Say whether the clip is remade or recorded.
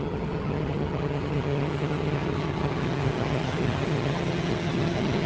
remade